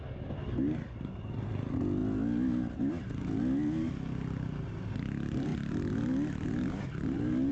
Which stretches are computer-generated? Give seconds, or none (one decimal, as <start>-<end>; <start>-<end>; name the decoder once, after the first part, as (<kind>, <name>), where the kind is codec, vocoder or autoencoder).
none